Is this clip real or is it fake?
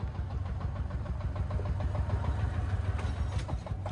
real